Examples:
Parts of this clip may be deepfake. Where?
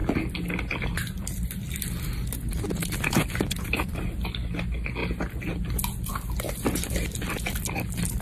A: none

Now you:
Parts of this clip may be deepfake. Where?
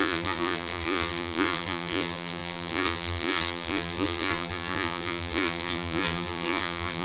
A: 0.0-7.0 (vocoder, BigVGAN v2)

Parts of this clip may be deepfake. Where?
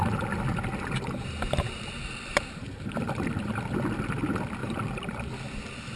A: 2.3-3.5 (vocoder, BigVGAN v2); 4.6-5.2